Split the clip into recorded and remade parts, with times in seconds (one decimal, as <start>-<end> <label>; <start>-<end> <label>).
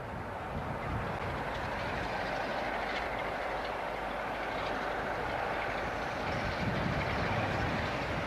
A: 0.0-2.5 recorded; 2.5-6.7 remade; 6.7-8.3 recorded